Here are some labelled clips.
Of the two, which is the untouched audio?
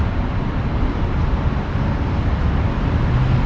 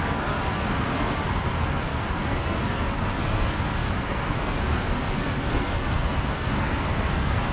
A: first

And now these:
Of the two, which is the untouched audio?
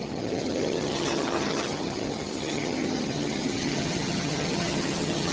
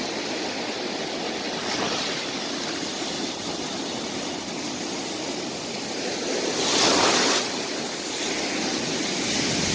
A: second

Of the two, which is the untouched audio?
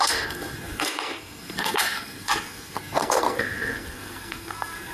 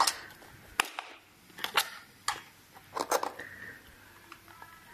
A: second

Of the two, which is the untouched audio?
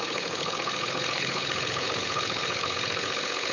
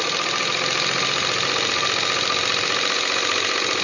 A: second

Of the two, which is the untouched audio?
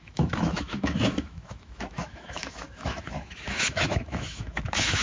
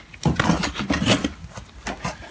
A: second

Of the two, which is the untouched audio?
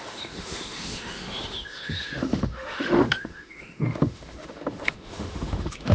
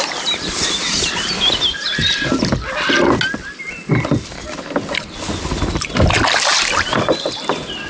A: second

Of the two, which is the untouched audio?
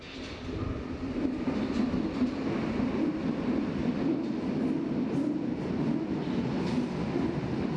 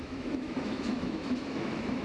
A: first